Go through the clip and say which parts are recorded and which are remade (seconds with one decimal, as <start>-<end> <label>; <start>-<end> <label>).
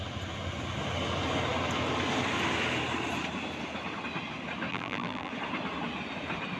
0.0-4.7 recorded; 4.7-5.3 remade; 5.3-6.6 recorded